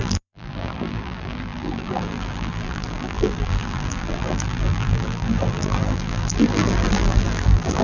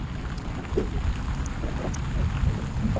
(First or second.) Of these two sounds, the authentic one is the second